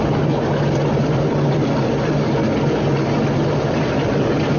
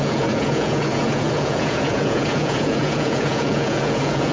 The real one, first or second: first